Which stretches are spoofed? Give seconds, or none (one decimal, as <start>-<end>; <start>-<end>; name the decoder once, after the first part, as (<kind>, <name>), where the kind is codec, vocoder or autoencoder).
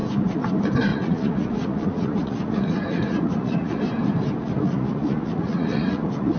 0.0-0.5 (vocoder, Vocos); 0.9-3.8; 4.4-6.4